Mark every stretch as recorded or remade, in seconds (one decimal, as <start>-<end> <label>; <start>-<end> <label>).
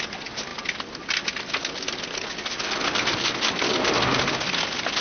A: 0.0-5.0 recorded